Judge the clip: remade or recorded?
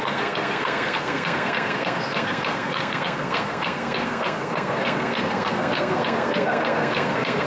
remade